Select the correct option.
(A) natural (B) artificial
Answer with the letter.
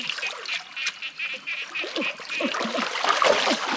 A